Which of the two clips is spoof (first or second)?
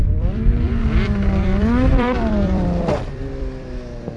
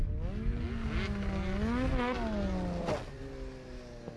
first